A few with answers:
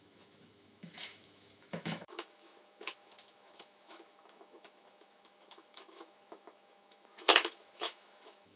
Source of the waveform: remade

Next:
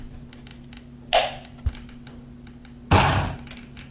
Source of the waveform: recorded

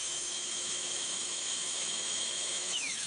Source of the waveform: remade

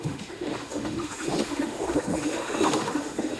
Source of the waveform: remade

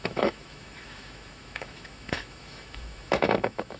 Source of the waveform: remade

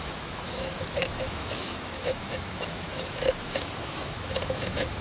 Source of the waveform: remade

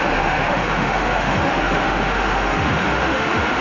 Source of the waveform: remade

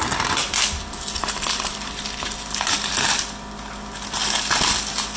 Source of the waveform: recorded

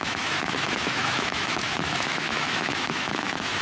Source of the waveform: remade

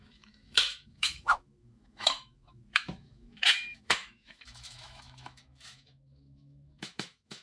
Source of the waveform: remade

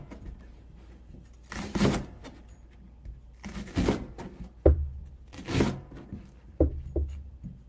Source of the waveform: recorded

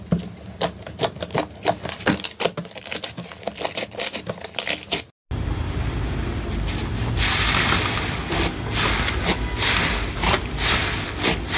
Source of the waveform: recorded